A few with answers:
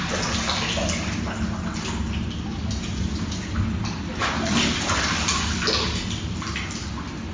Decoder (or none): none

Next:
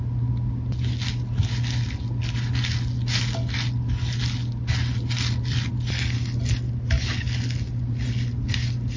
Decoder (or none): none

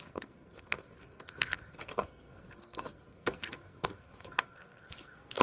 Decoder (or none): codec, SNAC